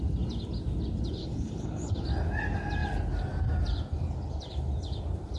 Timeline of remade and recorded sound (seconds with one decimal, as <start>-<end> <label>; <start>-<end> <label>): 0.0-1.2 recorded; 1.2-1.9 remade; 1.9-5.4 recorded